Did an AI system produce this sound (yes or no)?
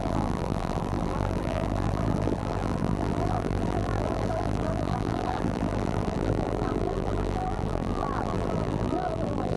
yes